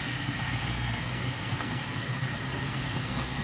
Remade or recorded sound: remade